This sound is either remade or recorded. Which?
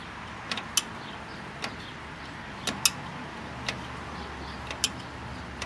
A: recorded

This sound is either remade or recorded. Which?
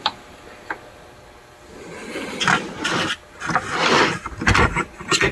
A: recorded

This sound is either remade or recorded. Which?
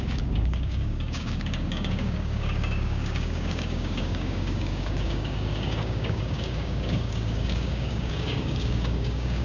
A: remade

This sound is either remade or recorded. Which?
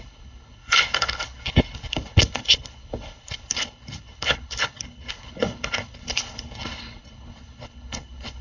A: remade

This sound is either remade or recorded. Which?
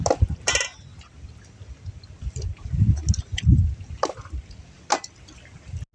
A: recorded